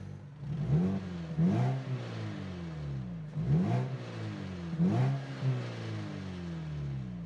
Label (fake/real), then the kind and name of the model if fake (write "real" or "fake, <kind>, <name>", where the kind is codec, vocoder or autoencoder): real